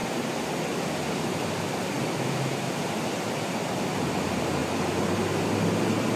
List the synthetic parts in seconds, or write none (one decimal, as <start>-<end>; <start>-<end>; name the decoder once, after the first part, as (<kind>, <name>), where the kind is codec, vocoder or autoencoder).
0.0-3.7 (vocoder, BigVGAN v2); 4.6-5.2